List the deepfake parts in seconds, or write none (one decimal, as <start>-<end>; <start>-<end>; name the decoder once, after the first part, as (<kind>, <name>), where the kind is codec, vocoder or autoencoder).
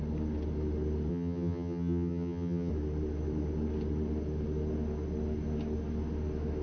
1.1-2.7 (vocoder, HiFi-GAN)